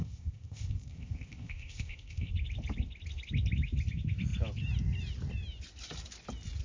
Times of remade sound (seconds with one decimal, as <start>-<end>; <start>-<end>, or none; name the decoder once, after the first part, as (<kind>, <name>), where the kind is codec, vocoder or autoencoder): 0.0-2.3 (codec, ZipCodec)